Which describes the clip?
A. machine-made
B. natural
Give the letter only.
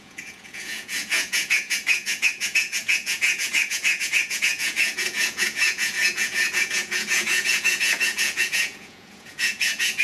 A